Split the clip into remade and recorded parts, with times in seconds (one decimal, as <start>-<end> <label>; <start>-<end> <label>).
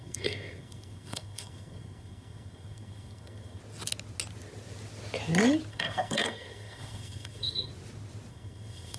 0.0-3.6 remade; 3.6-5.7 recorded; 5.7-7.7 remade; 7.7-8.3 recorded; 8.3-9.0 remade